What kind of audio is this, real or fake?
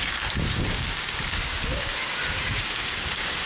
fake